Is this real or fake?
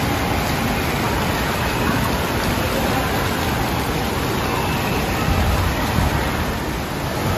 real